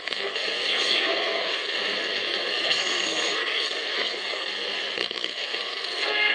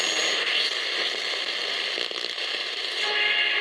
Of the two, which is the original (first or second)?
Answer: second